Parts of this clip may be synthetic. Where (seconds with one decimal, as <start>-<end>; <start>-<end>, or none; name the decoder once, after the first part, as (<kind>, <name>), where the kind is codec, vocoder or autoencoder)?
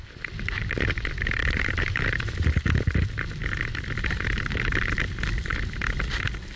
1.4-2.2 (vocoder, BigVGAN v2)